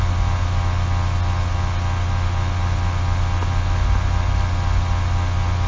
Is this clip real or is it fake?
real